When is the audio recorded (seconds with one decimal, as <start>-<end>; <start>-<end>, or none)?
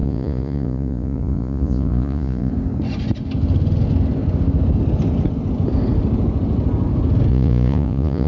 2.5-7.3